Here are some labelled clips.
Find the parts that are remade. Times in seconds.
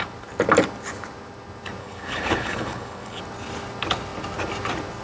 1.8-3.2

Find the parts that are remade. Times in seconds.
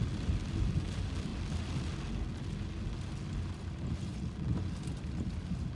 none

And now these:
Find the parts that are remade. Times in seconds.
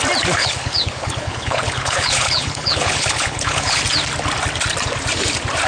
0.4-3.8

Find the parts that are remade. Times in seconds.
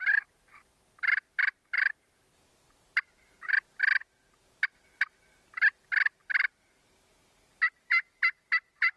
none